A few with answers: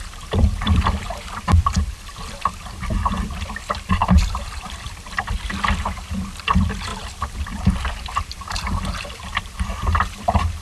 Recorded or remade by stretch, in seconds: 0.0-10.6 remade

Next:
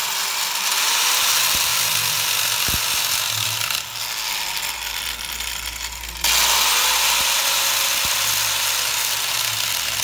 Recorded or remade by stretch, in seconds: 0.0-10.0 recorded